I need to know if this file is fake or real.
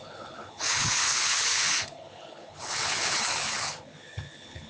fake